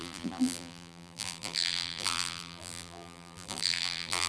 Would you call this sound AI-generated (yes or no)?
yes